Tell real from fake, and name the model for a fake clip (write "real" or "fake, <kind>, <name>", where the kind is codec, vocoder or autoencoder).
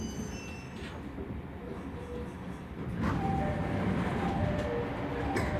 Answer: real